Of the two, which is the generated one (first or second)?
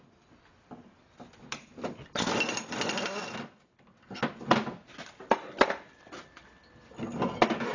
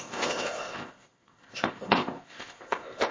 second